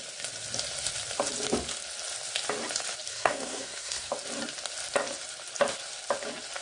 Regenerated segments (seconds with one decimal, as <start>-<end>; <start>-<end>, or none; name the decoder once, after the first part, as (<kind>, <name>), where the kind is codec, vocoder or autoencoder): 3.1-4.1 (codec, SNAC)